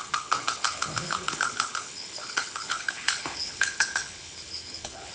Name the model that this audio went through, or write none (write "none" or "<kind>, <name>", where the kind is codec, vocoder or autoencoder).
codec, HILCodec